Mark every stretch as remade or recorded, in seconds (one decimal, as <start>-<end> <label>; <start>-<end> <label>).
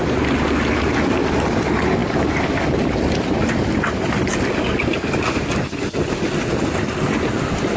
0.0-7.8 recorded